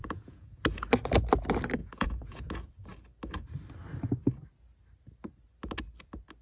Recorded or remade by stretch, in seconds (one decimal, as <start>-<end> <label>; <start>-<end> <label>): 0.0-0.6 remade; 0.6-1.8 recorded; 1.8-2.5 remade; 2.5-6.4 recorded